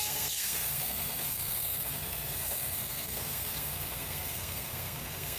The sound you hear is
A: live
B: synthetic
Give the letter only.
B